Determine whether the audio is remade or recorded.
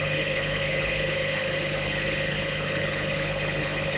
remade